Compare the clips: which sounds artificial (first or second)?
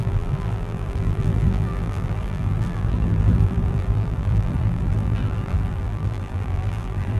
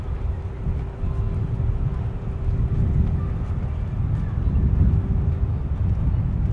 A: first